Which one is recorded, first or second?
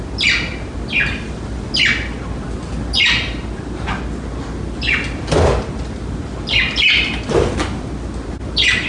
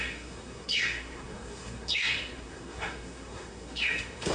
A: first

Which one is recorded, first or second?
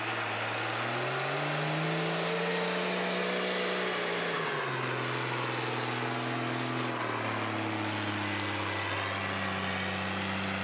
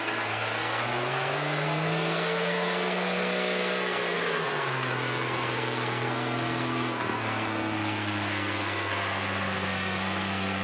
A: first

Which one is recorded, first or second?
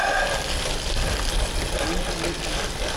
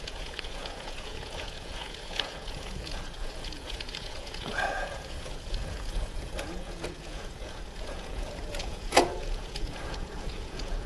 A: first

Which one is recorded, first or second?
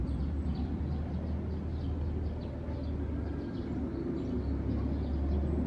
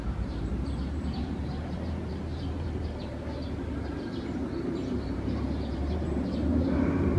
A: first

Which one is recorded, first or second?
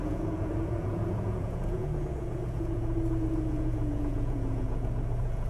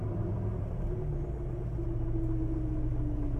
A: second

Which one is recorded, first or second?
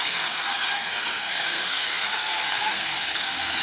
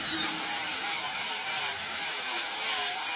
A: second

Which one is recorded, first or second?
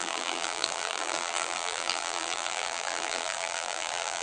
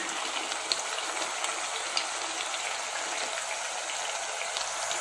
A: second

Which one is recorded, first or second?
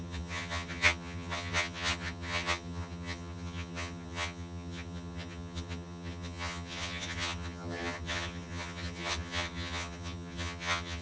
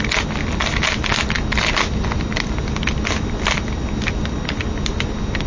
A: second